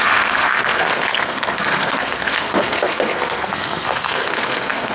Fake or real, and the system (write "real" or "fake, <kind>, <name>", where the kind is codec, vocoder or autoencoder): fake, codec, SNAC